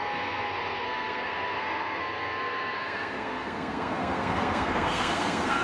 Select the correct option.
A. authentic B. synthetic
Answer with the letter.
B